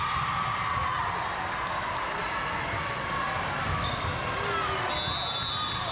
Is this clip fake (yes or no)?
no